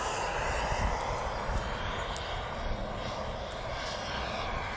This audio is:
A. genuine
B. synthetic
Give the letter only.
A